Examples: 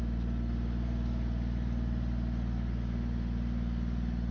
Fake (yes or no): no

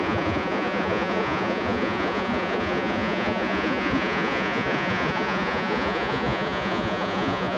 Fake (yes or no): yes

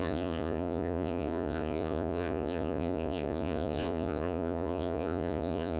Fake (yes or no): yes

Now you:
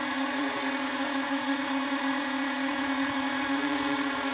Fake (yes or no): yes